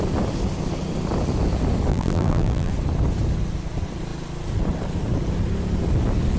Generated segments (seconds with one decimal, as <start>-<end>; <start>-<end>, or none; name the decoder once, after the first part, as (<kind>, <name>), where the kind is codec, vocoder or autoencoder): 1.9-2.7 (vocoder, BigVGAN v2)